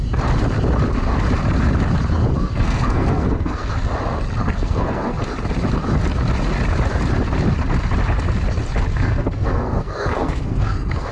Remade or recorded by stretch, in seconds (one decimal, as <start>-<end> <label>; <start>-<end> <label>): 0.0-2.3 recorded; 2.3-3.7 remade; 3.7-4.4 recorded; 4.4-5.2 remade; 5.2-8.9 recorded; 8.9-11.1 remade